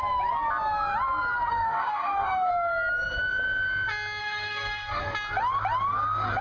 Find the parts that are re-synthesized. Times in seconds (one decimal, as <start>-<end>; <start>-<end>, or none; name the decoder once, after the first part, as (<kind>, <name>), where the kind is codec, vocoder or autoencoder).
1.5-2.5 (codec, DAC); 4.2-5.0